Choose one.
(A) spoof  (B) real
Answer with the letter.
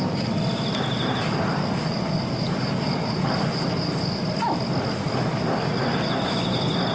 B